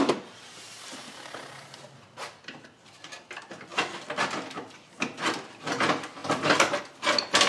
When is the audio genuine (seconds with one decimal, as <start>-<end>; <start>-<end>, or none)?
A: 0.0-7.5